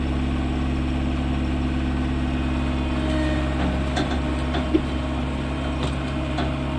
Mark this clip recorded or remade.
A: recorded